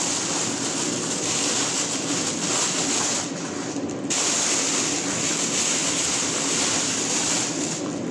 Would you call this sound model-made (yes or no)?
yes